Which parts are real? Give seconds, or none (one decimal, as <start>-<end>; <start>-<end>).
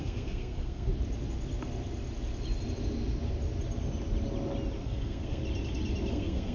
0.9-4.8; 5.4-6.1